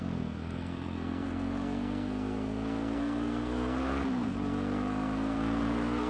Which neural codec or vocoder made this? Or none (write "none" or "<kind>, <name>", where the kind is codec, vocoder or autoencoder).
codec, SNAC